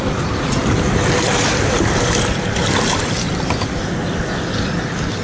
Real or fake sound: real